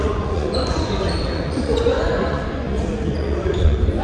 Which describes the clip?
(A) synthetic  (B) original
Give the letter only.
A